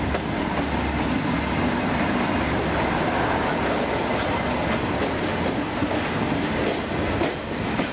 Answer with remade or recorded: recorded